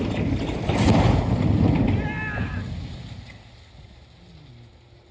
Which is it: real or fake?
real